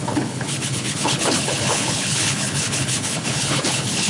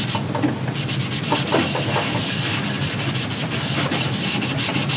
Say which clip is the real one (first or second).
second